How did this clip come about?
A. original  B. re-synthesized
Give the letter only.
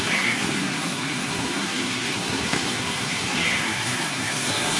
B